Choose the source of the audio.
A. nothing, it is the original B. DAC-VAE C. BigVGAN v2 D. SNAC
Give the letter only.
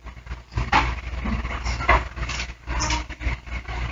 A